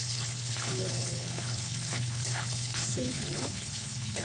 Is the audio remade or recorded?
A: remade